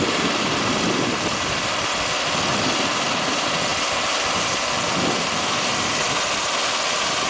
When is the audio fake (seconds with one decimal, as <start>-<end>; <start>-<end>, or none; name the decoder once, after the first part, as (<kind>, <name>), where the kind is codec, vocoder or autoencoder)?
none

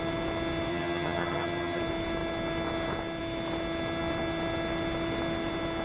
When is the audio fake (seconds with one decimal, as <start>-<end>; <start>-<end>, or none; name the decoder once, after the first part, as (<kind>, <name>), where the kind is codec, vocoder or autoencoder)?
0.7-1.8 (vocoder, HiFi-GAN)